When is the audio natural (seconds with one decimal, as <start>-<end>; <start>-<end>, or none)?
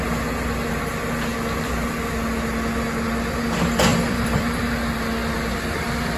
0.0-3.9; 4.6-5.2